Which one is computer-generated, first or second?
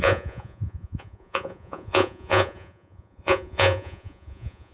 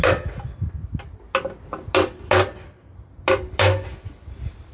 first